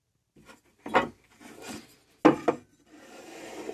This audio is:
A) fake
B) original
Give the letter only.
B